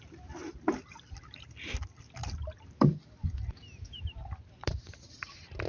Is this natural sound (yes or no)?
yes